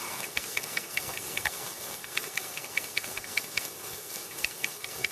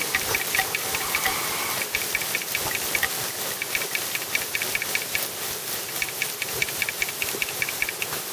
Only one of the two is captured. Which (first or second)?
second